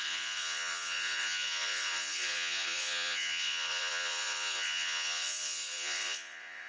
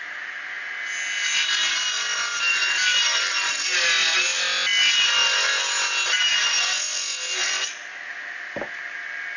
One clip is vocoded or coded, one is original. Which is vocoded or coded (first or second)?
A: first